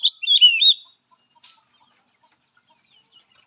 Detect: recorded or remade recorded